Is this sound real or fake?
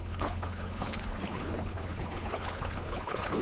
fake